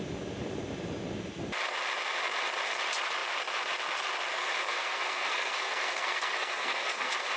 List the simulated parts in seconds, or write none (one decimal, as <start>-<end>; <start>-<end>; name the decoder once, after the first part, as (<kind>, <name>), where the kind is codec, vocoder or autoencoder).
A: 4.7-7.4 (codec, SNAC)